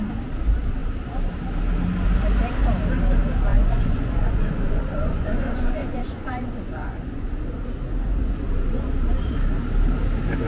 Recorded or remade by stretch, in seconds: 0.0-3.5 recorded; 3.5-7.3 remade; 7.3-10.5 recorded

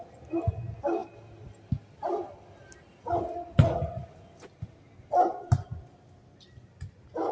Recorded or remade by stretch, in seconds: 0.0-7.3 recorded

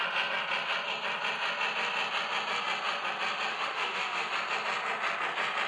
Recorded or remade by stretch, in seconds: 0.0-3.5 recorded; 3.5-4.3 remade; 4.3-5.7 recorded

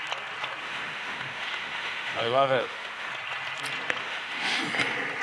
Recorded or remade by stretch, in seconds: 0.0-0.6 recorded; 0.6-3.1 remade; 3.1-4.0 recorded; 4.0-4.6 remade; 4.6-5.2 recorded

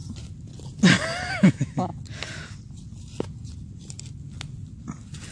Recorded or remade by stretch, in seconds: 0.0-1.3 recorded; 1.3-1.9 remade; 1.9-5.3 recorded